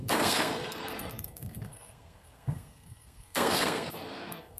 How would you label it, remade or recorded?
remade